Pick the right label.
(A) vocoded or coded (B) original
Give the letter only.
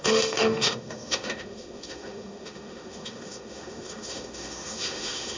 A